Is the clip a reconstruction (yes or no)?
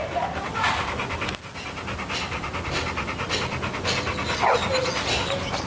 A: no